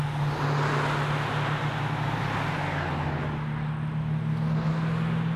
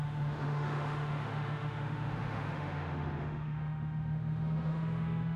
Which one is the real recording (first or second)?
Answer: first